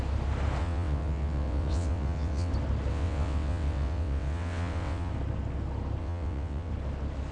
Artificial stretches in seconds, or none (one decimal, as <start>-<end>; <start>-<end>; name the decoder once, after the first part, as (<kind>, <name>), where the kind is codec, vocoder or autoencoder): 0.6-2.5 (vocoder, WaveNeXt); 2.9-5.1; 6.0-6.7

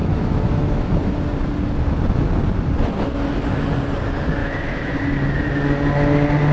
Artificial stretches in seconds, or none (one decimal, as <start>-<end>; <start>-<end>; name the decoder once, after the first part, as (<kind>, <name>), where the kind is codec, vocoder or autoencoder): 0.0-1.2 (autoencoder, DAC-VAE); 4.4-5.0

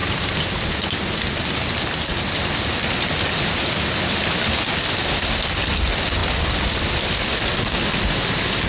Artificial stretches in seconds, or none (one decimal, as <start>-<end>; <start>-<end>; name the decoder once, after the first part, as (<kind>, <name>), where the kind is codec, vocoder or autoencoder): none